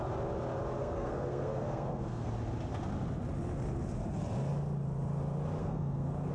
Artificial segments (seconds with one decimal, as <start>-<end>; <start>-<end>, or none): 0.8-2.3; 5.6-6.3